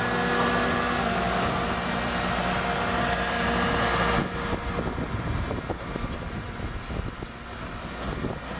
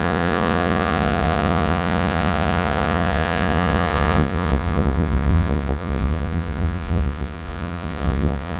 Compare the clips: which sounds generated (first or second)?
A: second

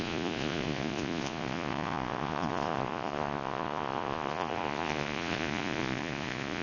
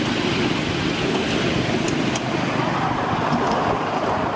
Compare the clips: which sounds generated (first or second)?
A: first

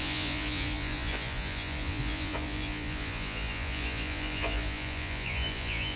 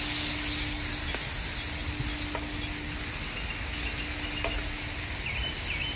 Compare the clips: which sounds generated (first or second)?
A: first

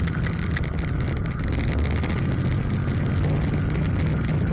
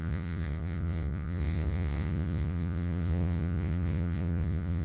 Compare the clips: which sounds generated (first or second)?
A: second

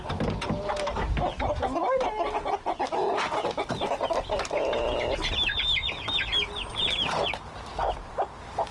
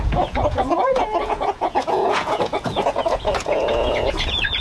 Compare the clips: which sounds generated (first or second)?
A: second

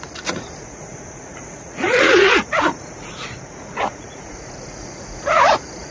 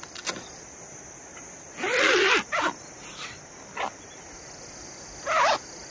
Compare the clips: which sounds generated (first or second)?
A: first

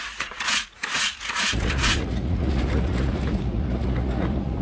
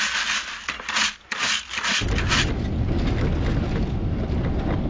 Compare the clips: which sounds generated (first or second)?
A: first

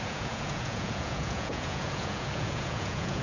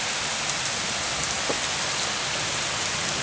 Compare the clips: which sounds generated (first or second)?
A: first